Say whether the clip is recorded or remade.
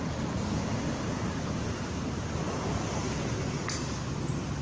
recorded